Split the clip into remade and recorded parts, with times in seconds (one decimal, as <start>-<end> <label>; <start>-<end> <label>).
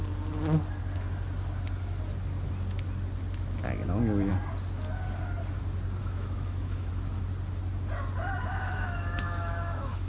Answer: 0.0-6.0 recorded; 6.0-6.9 remade; 6.9-8.5 recorded; 8.5-10.1 remade